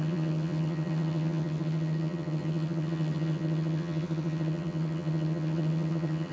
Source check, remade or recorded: remade